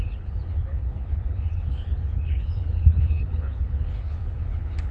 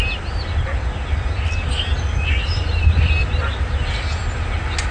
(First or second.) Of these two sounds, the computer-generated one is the first